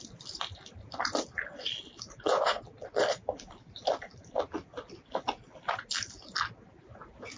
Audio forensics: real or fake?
real